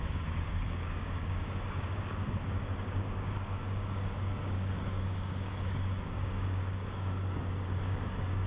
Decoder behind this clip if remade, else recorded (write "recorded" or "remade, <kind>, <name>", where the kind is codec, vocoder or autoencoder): remade, codec, DAC